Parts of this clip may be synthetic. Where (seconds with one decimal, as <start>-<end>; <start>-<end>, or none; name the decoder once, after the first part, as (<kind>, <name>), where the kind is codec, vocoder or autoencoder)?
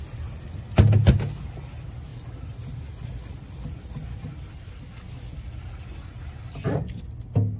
none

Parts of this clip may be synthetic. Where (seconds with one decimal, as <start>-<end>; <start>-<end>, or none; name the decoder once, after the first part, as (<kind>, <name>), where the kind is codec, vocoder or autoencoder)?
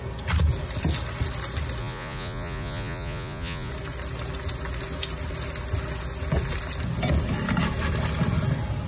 1.8-3.7 (vocoder, Vocos)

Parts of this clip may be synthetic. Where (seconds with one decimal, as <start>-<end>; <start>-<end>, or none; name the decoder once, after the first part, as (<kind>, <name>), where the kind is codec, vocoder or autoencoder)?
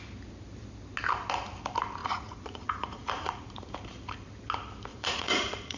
2.0-3.4 (vocoder, Vocos); 4.9-5.8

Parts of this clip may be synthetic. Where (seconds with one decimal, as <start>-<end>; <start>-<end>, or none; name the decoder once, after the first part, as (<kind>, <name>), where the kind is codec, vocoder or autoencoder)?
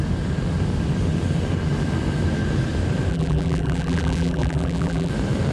3.1-5.1 (vocoder, BigVGAN v2)